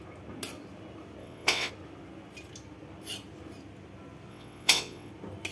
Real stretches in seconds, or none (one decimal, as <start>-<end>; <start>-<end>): 0.0-1.2; 1.7-4.3; 5.1-5.5